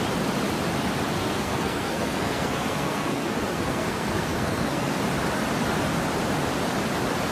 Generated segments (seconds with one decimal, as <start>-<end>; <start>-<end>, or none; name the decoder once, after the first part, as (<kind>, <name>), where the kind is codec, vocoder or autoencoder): 1.2-5.0 (codec, SNAC)